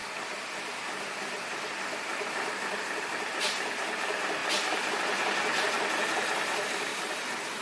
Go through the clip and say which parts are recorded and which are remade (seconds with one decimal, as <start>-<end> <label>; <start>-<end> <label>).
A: 0.0-0.6 remade; 0.6-7.6 recorded